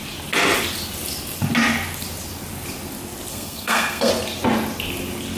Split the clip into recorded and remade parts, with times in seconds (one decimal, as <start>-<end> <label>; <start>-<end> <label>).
0.0-3.3 recorded; 3.3-4.1 remade; 4.1-5.4 recorded